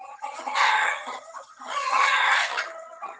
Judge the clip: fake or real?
fake